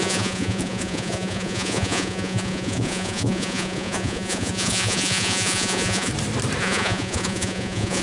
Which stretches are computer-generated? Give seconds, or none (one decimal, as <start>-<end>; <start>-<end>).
0.0-6.1; 6.6-8.0